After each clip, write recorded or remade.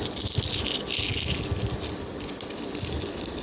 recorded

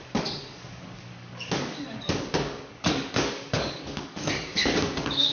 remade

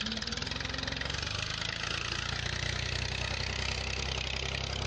recorded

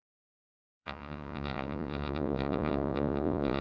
remade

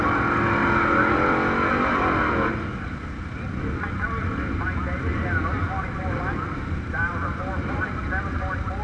recorded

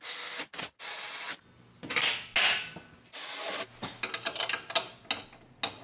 recorded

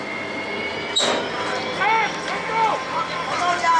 recorded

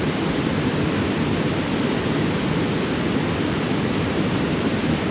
recorded